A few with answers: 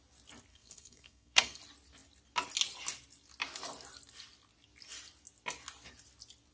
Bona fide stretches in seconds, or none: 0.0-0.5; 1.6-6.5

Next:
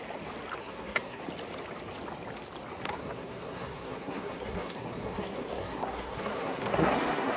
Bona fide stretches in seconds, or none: 0.0-0.6; 1.2-2.9